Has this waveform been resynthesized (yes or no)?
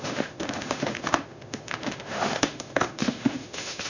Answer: yes